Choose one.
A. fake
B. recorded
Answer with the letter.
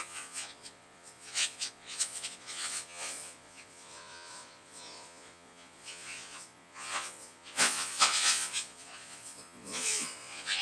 A